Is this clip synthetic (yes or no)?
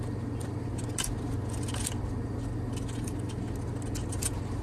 no